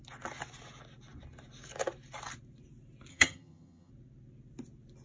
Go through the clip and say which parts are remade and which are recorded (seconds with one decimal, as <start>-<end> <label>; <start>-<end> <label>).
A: 0.0-3.1 recorded; 3.1-3.9 remade; 3.9-5.0 recorded